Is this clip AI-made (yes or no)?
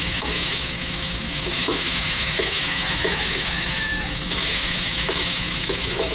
yes